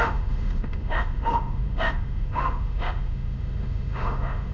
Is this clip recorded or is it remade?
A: remade